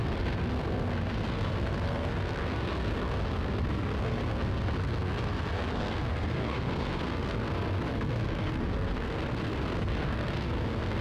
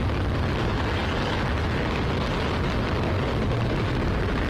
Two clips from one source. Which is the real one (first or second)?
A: second